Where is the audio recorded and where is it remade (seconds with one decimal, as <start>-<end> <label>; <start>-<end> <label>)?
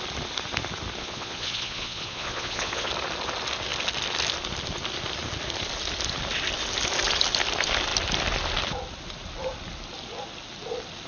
0.0-1.0 recorded; 1.0-2.9 remade; 2.9-11.1 recorded